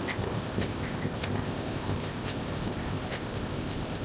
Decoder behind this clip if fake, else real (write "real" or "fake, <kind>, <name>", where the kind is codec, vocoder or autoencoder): fake, codec, ZipCodec